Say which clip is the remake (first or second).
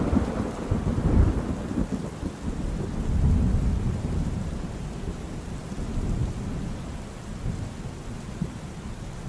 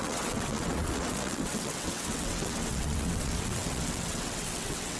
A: second